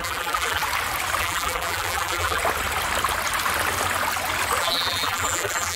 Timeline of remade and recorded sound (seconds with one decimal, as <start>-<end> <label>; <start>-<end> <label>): 0.0-0.6 remade; 0.6-1.2 recorded; 1.2-2.4 remade; 2.4-4.6 recorded; 4.6-5.8 remade